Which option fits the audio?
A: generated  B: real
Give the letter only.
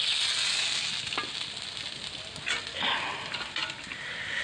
B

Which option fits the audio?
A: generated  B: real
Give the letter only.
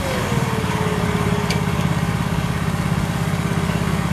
A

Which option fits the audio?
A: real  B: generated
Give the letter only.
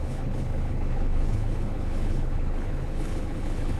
B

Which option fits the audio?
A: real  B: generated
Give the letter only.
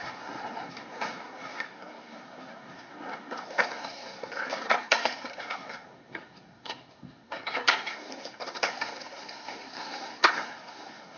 B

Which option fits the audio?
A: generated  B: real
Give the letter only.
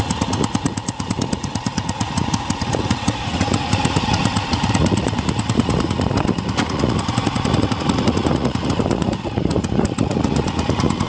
A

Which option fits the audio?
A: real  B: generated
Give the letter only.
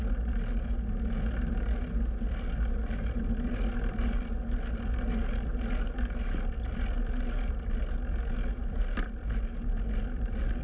A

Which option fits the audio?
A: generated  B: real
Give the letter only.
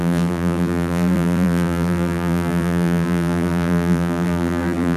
A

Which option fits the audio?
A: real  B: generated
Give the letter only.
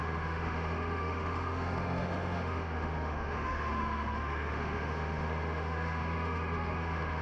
B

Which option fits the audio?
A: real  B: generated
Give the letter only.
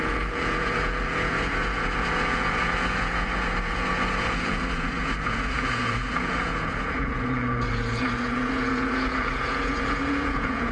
B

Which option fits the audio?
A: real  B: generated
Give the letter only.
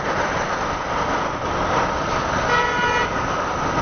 A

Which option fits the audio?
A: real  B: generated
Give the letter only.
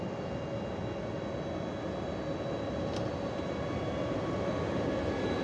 A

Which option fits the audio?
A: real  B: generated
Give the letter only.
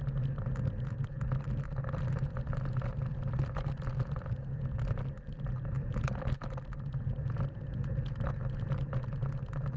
A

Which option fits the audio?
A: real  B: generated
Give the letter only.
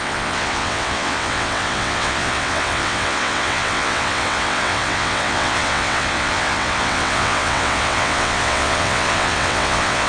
B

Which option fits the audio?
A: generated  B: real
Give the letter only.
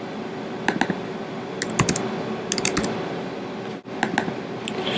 B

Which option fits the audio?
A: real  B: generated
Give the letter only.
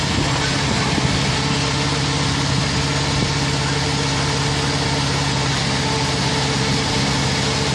A